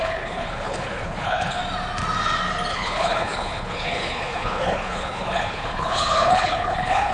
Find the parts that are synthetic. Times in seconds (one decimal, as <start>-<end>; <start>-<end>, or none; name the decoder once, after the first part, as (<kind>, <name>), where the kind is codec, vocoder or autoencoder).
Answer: 0.0-1.6 (codec, HILCodec); 2.7-7.1